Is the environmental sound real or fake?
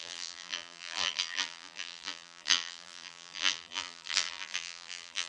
fake